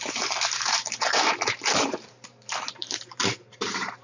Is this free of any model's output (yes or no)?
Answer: no